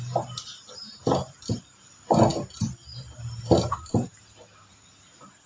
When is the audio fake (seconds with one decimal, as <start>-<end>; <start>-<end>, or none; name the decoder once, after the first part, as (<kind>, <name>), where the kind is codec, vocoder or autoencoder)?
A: none